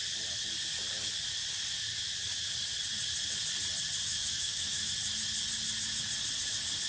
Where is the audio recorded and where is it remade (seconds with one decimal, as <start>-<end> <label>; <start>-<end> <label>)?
0.0-4.1 recorded; 4.1-4.9 remade; 4.9-6.9 recorded